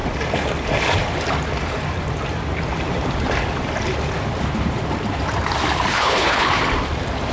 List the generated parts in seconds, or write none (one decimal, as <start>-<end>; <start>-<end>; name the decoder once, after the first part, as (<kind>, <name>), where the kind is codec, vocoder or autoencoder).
5.9-6.6 (codec, HILCodec)